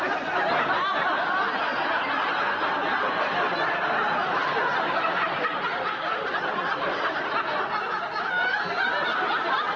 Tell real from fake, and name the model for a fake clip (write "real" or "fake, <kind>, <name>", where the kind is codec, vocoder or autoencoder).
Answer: real